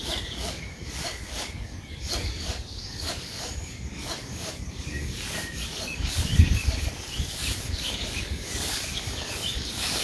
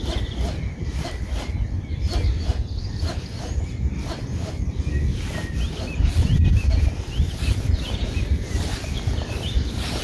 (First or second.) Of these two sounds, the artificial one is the first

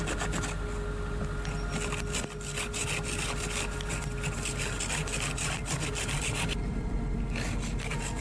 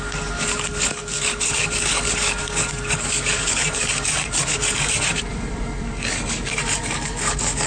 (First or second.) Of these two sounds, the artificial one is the second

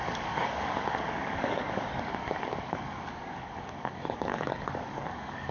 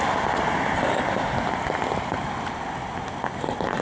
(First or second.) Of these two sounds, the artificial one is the first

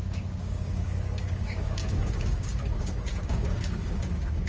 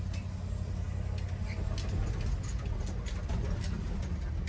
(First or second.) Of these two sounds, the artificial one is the first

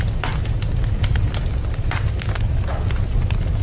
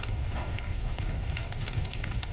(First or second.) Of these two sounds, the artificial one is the second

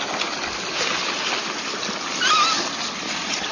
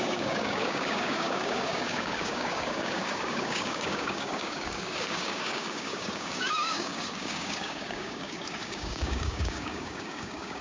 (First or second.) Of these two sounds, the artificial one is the second